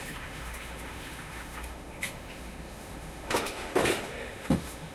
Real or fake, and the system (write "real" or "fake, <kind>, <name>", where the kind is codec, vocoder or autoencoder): fake, autoencoder, DAC-VAE